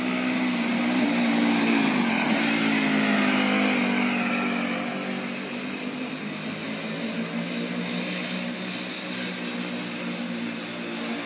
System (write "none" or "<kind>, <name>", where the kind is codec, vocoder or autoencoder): none